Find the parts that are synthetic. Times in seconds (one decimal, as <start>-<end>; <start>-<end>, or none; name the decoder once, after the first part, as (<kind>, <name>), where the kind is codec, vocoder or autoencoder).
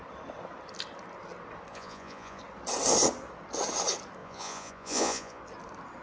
1.7-2.4 (vocoder, Vocos); 4.2-5.4